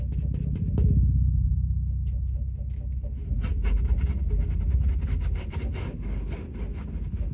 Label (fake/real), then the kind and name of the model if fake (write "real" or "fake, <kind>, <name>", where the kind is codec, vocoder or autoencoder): real